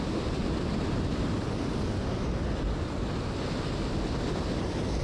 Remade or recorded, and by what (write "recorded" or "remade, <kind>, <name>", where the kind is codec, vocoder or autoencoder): recorded